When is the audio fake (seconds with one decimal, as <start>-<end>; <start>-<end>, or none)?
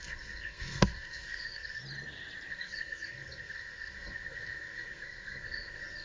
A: 0.0-1.8; 2.5-6.0